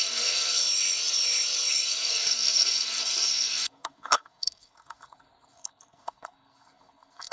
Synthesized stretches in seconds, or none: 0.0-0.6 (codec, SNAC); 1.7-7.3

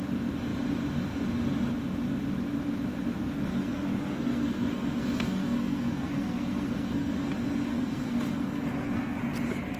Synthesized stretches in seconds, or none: 3.2-7.3 (codec, SNAC); 7.7-9.2